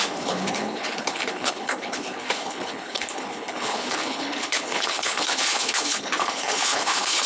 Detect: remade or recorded remade